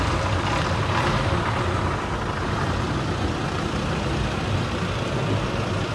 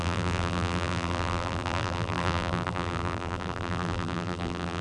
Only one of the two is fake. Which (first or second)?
second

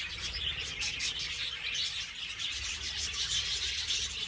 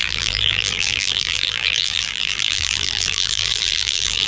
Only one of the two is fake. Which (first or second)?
second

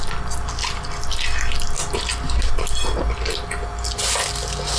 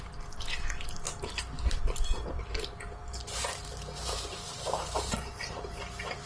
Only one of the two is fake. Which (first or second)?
second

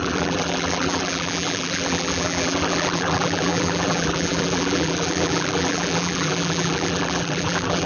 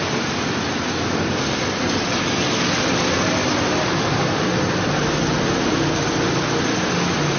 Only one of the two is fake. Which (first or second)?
first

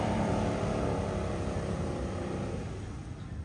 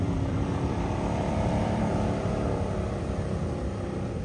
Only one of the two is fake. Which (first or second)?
second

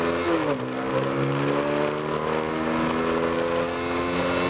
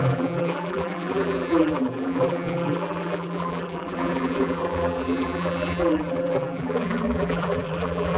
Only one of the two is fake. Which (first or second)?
second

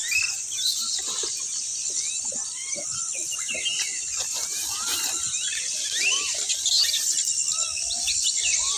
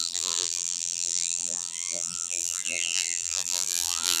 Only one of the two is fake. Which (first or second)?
second